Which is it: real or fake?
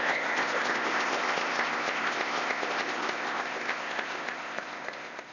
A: fake